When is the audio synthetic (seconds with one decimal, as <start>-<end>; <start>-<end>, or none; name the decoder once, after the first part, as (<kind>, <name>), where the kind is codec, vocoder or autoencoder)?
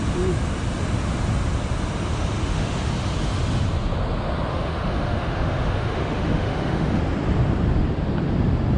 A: 2.4-2.9 (autoencoder, DAC-VAE); 4.5-7.0